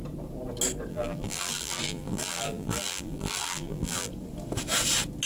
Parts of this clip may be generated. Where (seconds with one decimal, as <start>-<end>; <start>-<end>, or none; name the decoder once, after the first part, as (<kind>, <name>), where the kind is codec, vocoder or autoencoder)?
0.9-4.1 (vocoder, BigVGAN v2)

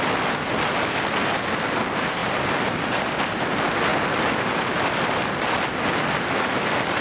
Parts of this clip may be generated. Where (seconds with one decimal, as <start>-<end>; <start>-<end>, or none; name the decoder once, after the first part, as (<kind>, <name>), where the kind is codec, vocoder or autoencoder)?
2.2-3.0 (vocoder, BigVGAN v2)

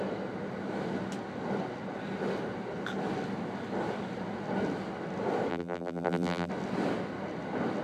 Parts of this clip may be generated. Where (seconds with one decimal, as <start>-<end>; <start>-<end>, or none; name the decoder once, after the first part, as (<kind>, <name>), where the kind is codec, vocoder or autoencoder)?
5.5-6.5 (vocoder, BigVGAN v2)

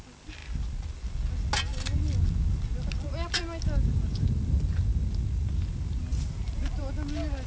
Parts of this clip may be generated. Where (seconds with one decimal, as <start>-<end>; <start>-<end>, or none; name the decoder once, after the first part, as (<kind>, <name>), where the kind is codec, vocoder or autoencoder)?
6.1-6.9 (vocoder, BigVGAN v2)

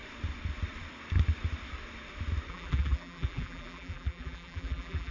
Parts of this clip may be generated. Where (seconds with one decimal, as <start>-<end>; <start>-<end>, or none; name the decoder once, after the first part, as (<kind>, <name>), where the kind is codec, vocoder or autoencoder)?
2.5-5.1 (vocoder, BigVGAN v2)

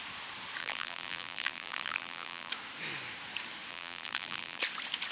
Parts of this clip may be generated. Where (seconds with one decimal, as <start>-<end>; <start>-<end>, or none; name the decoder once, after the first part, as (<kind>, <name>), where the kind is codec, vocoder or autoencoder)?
0.6-2.5 (vocoder, BigVGAN v2); 3.7-4.6